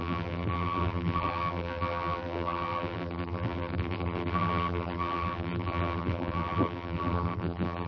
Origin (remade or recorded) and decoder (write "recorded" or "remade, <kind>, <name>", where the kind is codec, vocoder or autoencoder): remade, vocoder, BigVGAN v2